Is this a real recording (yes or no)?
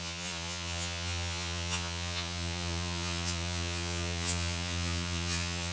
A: no